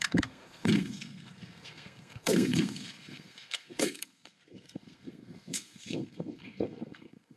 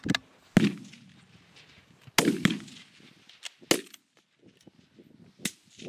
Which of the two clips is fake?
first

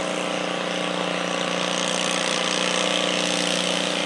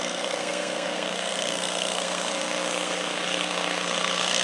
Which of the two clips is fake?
second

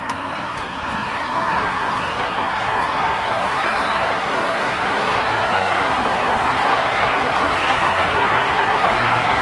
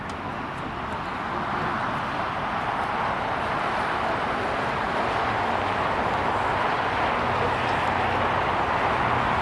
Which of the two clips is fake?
first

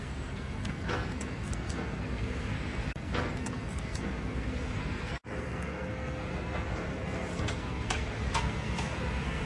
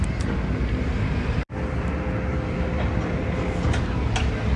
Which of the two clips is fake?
first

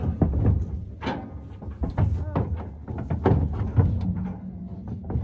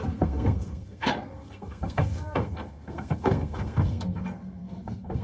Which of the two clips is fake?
second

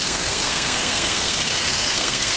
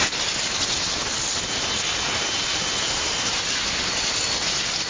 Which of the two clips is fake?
first